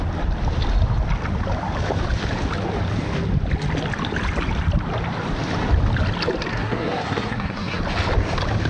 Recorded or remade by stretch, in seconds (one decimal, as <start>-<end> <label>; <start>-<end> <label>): 0.0-6.5 recorded; 6.5-7.8 remade; 7.8-8.7 recorded